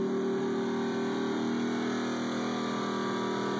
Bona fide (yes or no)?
yes